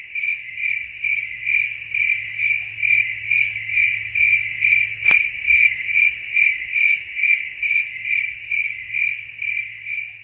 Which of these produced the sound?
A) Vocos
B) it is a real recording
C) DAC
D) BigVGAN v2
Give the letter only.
B